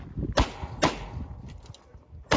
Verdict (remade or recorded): recorded